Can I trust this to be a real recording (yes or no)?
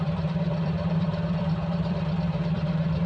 no